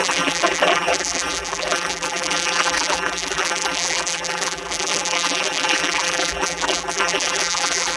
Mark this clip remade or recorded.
remade